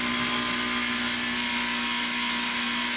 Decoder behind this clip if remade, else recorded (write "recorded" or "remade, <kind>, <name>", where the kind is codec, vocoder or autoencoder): recorded